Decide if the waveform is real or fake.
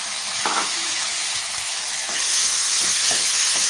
fake